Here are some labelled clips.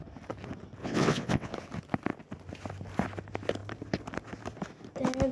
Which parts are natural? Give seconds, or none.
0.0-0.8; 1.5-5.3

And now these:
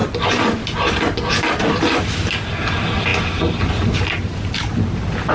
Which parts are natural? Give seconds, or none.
0.0-5.3